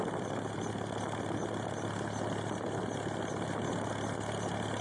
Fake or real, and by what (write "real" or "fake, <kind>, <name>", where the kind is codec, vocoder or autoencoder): real